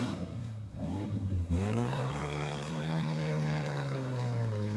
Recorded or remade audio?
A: remade